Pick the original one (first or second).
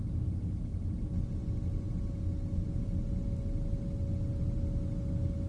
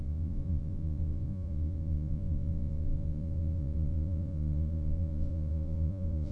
first